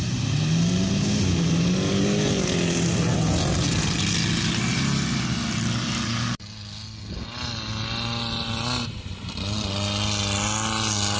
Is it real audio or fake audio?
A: real